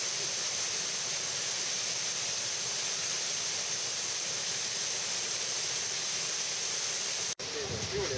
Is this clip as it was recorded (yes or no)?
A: no